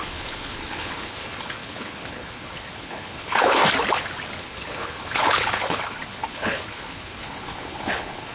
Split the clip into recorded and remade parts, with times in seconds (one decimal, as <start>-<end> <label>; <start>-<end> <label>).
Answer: 0.0-3.6 remade; 3.6-4.4 recorded; 4.4-8.3 remade